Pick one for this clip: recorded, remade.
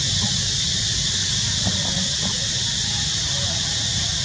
recorded